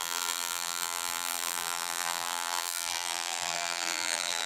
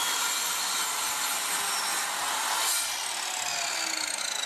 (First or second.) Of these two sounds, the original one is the second